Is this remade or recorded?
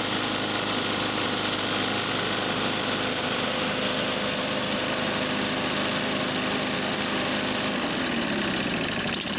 recorded